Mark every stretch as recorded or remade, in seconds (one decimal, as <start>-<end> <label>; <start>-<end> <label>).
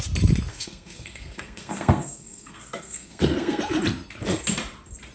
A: 0.0-0.5 recorded; 0.5-3.6 remade; 3.6-5.1 recorded